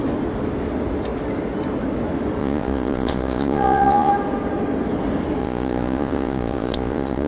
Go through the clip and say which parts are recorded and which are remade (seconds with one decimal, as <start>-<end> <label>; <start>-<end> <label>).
0.0-2.4 recorded; 2.4-4.1 remade; 4.1-5.4 recorded; 5.4-7.3 remade